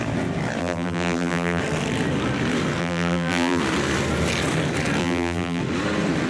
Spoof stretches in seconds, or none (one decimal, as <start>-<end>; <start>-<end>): 0.6-1.6; 2.8-3.6; 5.0-5.6